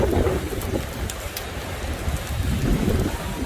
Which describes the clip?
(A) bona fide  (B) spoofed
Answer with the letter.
A